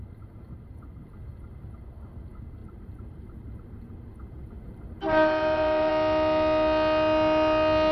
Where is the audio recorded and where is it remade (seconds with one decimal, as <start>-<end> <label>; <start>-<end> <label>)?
0.0-2.6 recorded; 2.6-5.9 remade; 5.9-7.9 recorded